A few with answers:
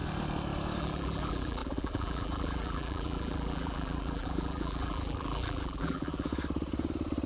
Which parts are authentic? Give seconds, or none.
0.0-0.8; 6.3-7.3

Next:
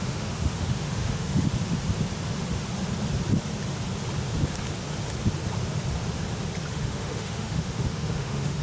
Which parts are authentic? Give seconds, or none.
1.5-6.7

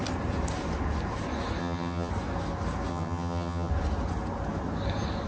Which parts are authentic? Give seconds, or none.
0.0-1.6; 2.1-2.9; 3.7-5.3

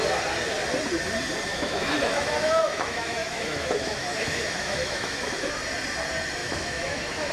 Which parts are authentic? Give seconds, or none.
0.0-1.5; 5.6-6.4